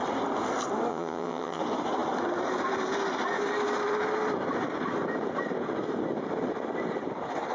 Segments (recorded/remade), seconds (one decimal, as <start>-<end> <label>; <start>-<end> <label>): 0.0-0.9 recorded; 0.9-1.6 remade; 1.6-7.5 recorded